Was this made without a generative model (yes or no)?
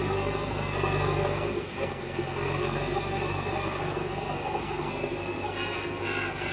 no